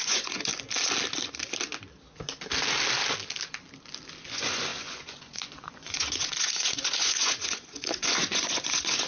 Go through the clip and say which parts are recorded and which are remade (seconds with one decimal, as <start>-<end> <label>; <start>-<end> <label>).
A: 0.0-0.5 remade; 0.5-4.2 recorded; 4.2-9.1 remade